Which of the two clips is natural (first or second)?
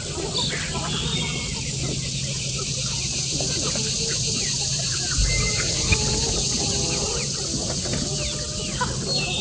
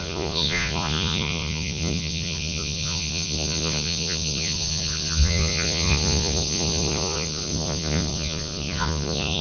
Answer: first